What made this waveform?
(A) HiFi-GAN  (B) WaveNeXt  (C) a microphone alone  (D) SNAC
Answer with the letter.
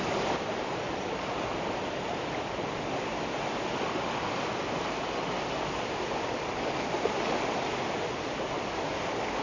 C